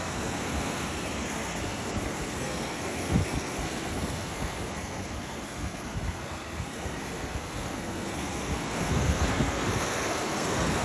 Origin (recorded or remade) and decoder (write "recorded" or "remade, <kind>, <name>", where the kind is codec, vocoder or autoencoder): remade, codec, SNAC